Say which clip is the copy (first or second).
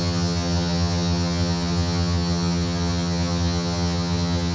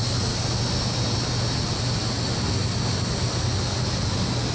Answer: first